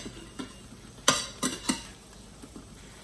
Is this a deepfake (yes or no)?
no